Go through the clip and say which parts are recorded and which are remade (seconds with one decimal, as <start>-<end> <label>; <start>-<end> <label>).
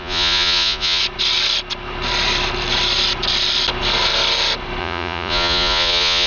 0.0-1.0 remade; 1.0-4.8 recorded; 4.8-6.3 remade